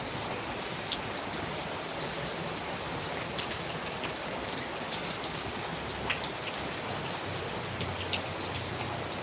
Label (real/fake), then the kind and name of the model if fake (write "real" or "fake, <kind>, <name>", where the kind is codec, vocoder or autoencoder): real